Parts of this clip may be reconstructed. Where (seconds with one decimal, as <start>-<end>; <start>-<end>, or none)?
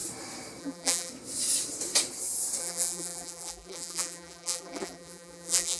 0.6-1.1; 2.6-5.8